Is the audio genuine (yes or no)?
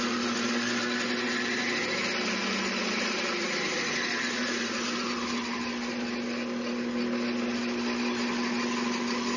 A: yes